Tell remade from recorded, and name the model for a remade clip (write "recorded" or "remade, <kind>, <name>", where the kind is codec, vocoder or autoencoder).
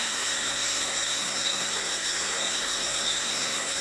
remade, codec, SNAC